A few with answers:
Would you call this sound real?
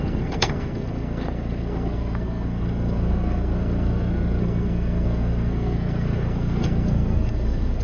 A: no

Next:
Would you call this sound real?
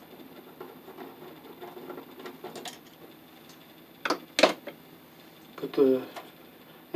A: yes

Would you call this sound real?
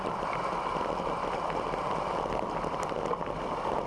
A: yes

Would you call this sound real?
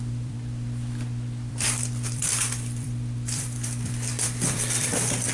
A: no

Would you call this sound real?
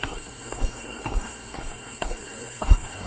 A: no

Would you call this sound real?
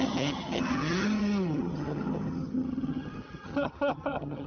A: no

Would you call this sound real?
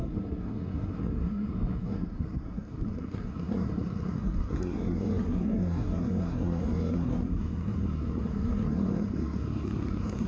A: no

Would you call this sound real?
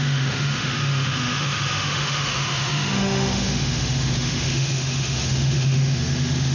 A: no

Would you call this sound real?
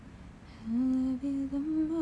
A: yes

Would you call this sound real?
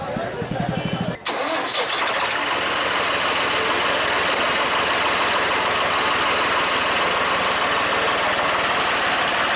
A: yes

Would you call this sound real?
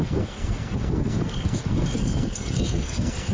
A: no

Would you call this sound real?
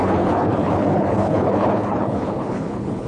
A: no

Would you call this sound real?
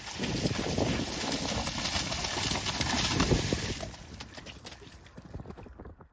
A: yes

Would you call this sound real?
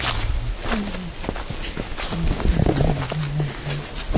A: yes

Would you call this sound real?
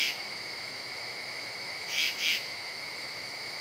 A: no